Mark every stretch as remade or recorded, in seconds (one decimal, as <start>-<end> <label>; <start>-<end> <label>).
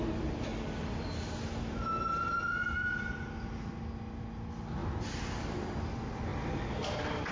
0.0-7.3 recorded